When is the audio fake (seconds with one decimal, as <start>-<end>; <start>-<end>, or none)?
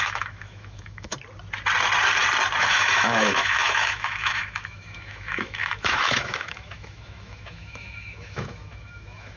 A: 0.0-1.1; 2.6-9.4